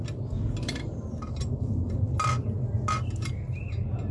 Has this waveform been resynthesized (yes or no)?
no